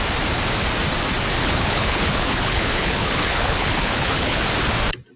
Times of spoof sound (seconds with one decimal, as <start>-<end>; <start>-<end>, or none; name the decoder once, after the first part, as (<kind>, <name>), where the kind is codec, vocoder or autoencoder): 1.4-4.4 (codec, HILCodec)